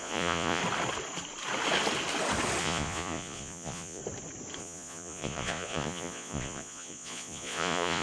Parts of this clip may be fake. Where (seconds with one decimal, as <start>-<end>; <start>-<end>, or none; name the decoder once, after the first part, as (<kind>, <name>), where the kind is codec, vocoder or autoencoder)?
0.0-0.6 (vocoder, Vocos); 2.6-4.0; 4.6-8.0